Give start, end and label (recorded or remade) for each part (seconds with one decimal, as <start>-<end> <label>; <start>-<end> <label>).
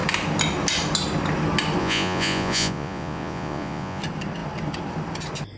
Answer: 0.0-1.8 recorded; 1.8-4.0 remade; 4.0-5.6 recorded